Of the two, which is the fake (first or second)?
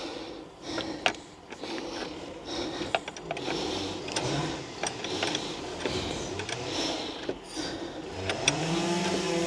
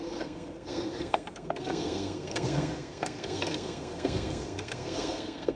second